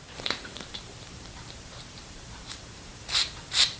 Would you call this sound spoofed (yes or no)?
yes